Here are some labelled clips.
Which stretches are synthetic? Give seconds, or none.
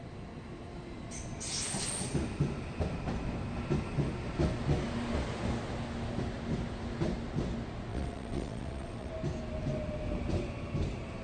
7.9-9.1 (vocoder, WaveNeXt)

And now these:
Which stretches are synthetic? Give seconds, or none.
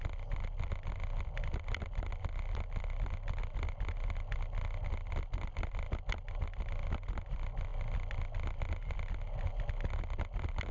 none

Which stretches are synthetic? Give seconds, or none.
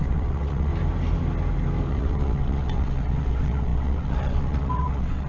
0.0-0.7 (vocoder, WaveNeXt); 1.9-5.3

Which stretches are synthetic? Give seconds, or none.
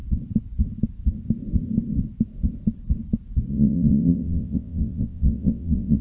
3.5-6.0 (vocoder, WaveNeXt)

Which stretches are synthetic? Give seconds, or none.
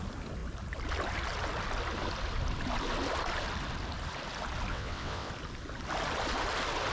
4.7-5.3 (vocoder, WaveNeXt)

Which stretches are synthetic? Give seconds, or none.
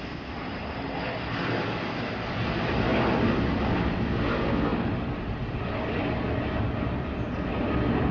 none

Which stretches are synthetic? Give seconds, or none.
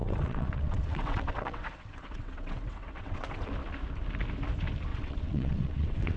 0.0-3.5 (vocoder, WaveNeXt); 4.9-6.2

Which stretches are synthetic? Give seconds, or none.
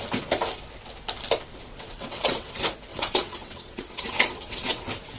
1.7-2.5 (vocoder, WaveNeXt); 2.9-4.8